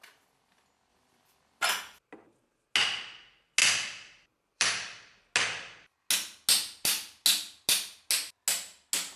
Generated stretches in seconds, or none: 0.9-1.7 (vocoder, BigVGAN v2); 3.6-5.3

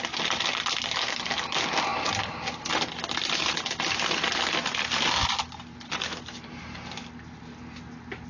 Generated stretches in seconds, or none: none

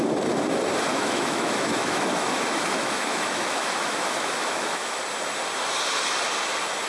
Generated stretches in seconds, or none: 0.9-5.0 (autoencoder, DAC-VAE)

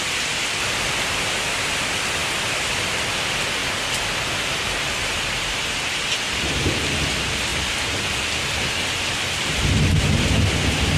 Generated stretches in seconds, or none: 2.2-3.2 (vocoder, BigVGAN v2)

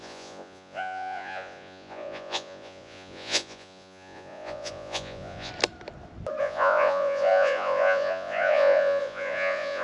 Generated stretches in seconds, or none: 0.0-5.5 (vocoder, Vocos); 6.4-9.8